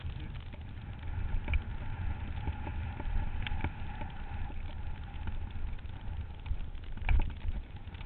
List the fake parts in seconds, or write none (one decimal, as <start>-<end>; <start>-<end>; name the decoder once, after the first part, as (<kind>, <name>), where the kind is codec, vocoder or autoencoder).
none